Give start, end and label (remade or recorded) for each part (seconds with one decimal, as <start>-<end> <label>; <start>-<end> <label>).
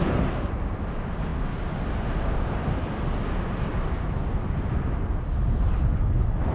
0.0-6.5 recorded